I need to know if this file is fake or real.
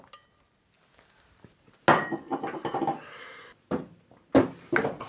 real